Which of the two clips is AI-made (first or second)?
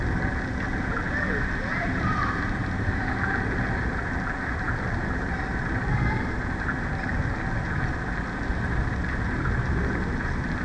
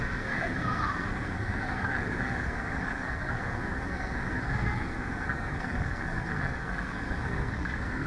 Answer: second